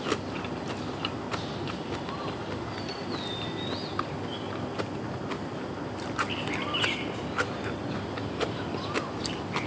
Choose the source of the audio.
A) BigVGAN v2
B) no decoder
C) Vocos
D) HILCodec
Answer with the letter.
B